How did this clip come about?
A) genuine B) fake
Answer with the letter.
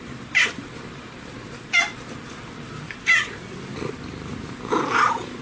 A